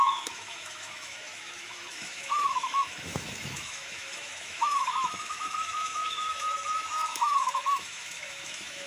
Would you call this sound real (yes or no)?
no